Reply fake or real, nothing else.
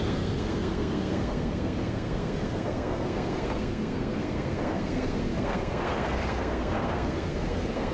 fake